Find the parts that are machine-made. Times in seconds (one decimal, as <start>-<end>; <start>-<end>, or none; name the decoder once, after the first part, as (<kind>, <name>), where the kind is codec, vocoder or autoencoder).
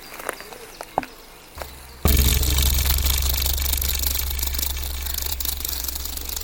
5.3-6.0 (vocoder, BigVGAN v2)